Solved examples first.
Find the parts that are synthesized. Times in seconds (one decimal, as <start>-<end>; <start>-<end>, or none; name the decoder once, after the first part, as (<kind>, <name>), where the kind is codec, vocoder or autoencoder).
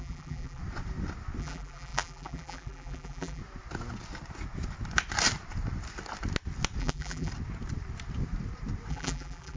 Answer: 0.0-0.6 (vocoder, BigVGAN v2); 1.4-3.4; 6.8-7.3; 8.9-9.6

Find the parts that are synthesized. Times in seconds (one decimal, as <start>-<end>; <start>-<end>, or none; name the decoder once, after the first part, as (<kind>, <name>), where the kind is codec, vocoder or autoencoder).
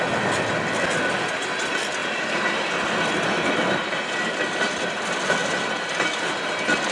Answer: 2.0-3.9 (vocoder, BigVGAN v2)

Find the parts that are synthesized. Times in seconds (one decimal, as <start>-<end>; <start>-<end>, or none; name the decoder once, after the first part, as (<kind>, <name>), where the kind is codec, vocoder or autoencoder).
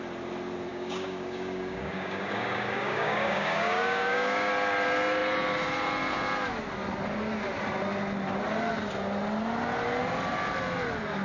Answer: 0.7-4.5 (codec, DAC)